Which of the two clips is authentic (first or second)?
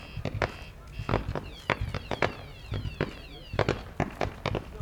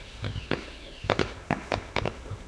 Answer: first